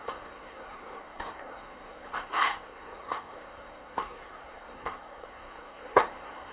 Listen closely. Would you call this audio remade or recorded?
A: remade